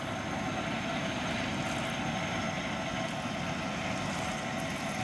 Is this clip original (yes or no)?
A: yes